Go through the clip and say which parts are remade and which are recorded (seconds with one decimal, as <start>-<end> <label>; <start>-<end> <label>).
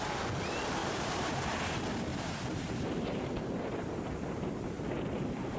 0.0-0.8 recorded; 0.8-1.6 remade; 1.6-2.1 recorded; 2.1-5.6 remade